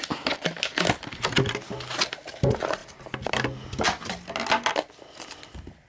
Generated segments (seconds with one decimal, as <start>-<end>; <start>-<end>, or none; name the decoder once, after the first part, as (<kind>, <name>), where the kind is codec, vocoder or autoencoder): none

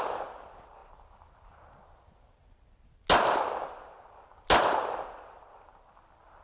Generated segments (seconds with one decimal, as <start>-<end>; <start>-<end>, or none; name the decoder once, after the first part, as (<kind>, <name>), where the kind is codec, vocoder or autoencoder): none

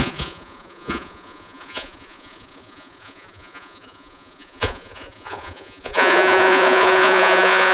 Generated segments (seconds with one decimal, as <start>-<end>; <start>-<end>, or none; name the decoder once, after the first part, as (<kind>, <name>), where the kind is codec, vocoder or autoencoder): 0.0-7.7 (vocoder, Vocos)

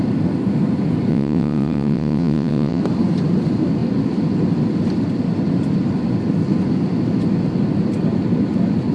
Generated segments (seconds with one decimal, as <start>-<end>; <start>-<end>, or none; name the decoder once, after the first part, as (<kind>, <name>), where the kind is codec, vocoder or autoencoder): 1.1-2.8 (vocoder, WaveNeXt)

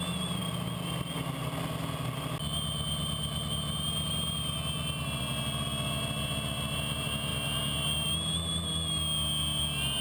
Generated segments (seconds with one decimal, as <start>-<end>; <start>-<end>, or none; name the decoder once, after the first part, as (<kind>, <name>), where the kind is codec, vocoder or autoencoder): none

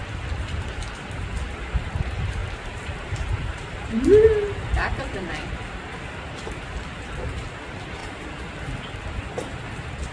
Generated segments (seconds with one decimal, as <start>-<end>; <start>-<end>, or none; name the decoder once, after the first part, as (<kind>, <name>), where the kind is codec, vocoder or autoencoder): 2.4-4.0 (vocoder, BigVGAN v2)

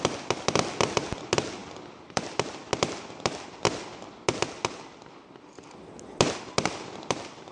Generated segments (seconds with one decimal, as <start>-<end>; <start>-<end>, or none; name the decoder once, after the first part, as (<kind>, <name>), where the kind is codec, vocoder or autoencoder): none